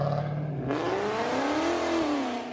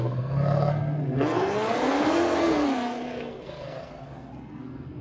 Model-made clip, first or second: second